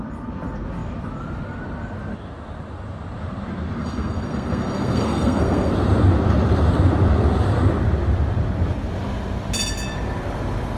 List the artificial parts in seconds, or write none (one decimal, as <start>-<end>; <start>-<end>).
3.8-5.7